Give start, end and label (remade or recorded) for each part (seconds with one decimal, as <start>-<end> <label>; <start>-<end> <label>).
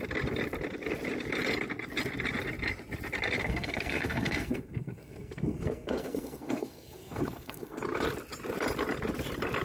0.0-3.4 recorded; 3.4-7.8 remade; 7.8-9.6 recorded